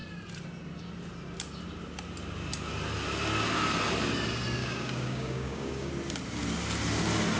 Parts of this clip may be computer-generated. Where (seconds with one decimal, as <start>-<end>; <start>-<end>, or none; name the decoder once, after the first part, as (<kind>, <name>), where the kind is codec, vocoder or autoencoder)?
4.6-5.9 (codec, DAC)